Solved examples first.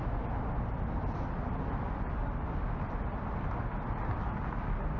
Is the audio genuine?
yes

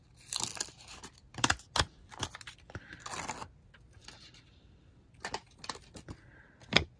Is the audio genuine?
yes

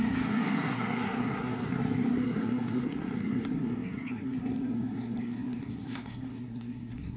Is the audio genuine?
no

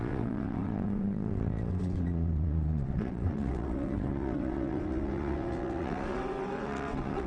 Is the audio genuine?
no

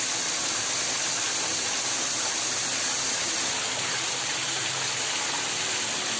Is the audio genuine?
yes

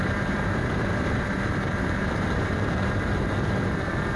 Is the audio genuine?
no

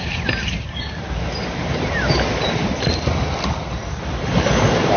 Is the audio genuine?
yes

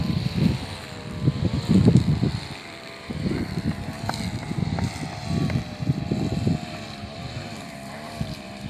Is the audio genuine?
no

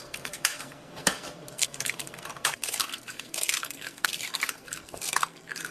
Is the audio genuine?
no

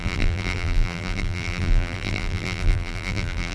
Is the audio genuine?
no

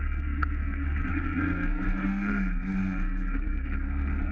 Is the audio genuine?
no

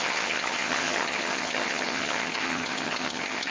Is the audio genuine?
no